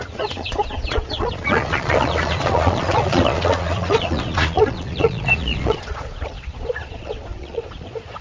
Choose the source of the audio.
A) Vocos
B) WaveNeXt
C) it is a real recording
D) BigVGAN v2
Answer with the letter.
A